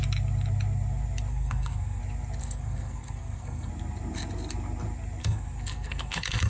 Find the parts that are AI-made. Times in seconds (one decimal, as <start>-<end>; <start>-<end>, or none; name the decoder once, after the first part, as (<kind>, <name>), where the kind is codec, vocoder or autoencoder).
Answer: 1.3-2.0 (codec, SNAC); 2.4-3.7; 5.2-6.5